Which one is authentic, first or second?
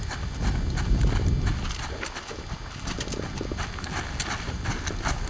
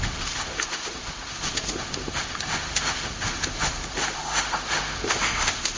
first